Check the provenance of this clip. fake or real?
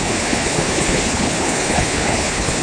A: fake